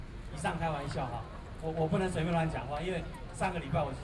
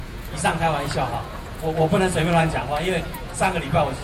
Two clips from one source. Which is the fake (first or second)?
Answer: second